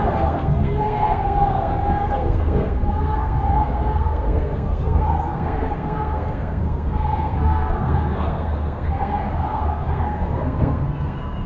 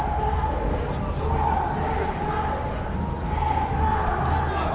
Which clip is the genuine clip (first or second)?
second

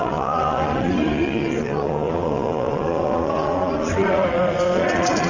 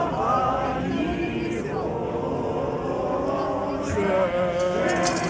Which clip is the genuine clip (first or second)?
second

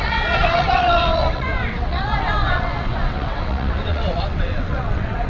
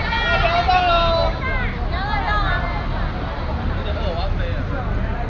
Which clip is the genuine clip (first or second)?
second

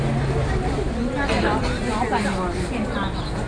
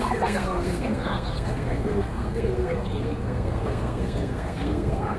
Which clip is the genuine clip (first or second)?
first